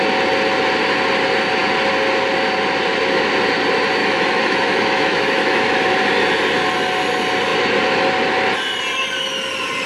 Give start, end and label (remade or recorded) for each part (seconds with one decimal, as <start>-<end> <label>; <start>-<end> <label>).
0.0-4.0 recorded; 4.0-5.8 remade; 5.8-9.9 recorded